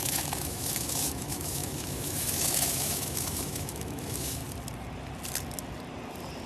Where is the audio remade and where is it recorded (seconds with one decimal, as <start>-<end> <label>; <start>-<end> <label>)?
0.0-4.4 remade; 4.4-6.5 recorded